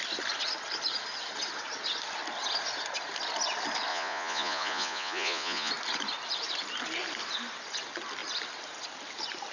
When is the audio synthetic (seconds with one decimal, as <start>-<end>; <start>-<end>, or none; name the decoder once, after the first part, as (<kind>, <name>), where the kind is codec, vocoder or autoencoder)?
3.9-5.7 (vocoder, Vocos)

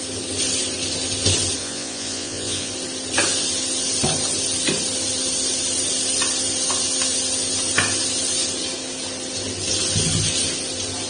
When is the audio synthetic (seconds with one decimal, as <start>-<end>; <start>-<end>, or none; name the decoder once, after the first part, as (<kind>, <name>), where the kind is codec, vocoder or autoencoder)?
1.6-2.7 (vocoder, Vocos)

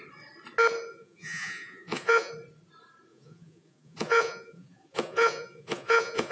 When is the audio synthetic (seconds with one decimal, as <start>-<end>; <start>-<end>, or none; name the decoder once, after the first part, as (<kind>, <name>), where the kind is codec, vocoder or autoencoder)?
0.9-2.3 (vocoder, Vocos); 3.1-6.3

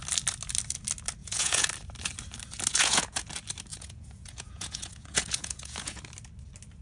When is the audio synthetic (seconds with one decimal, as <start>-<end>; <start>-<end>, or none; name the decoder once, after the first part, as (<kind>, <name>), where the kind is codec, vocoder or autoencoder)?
1.2-1.7 (vocoder, Vocos); 2.7-3.3; 3.7-6.0

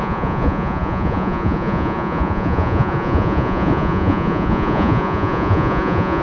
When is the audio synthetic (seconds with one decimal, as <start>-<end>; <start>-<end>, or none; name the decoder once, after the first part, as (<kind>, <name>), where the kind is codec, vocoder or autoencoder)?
0.0-6.2 (vocoder, Vocos)

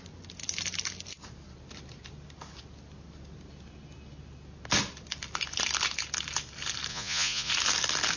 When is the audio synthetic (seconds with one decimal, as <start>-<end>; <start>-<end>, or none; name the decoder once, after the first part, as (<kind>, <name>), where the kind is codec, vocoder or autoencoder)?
6.9-7.5 (vocoder, Vocos)

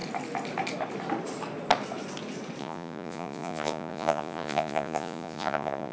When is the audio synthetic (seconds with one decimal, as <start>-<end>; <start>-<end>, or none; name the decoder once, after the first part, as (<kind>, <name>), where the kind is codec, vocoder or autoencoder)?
2.6-5.9 (vocoder, Vocos)